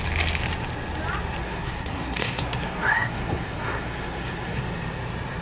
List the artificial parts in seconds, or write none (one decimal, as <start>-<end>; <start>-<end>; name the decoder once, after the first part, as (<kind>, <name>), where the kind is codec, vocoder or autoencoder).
1.4-4.6 (codec, SNAC)